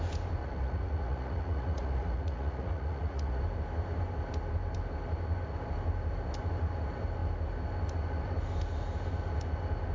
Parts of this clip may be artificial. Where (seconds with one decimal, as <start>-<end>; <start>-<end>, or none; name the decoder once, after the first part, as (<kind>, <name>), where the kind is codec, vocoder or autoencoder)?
0.4-3.4 (vocoder, Vocos)